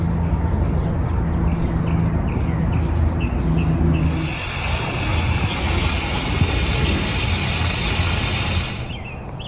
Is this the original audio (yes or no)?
yes